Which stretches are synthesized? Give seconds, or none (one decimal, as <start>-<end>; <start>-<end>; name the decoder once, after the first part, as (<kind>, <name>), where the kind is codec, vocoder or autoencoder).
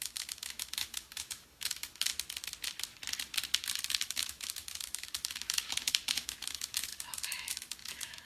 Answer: 0.0-2.1 (autoencoder, DAC-VAE); 3.9-8.3